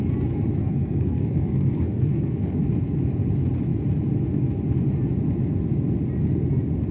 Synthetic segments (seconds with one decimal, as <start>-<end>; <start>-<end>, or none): 0.6-2.6